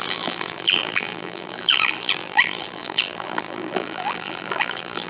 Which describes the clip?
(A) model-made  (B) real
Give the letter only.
A